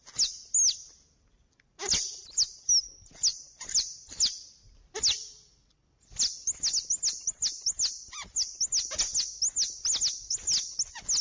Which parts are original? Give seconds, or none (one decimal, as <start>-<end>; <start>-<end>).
0.0-11.2